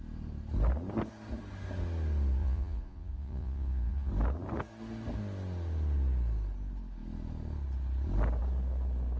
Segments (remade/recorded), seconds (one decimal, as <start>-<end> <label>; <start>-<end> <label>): 0.0-2.4 recorded; 2.4-4.1 remade; 4.1-9.2 recorded